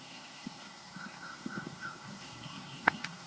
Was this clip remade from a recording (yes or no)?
yes